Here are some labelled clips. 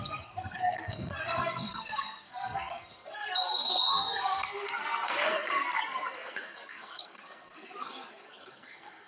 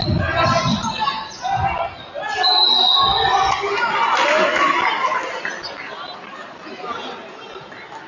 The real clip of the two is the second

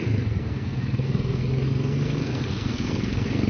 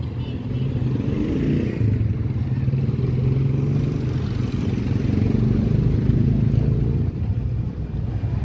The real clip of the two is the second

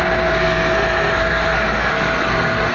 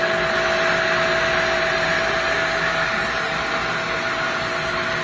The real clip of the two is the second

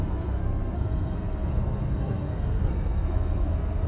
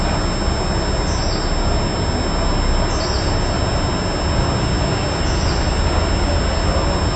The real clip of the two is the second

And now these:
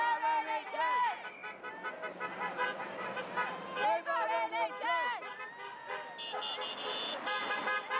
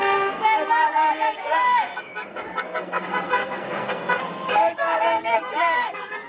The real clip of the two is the first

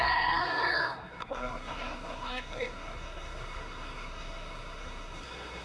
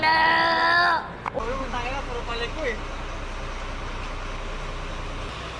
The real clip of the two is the second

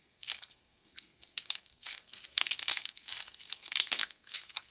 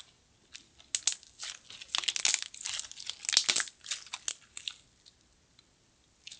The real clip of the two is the second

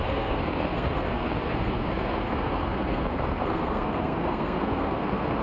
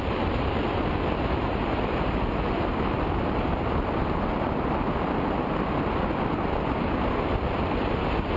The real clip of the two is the second